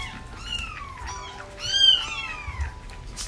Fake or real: real